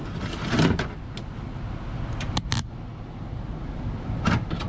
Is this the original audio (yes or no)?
yes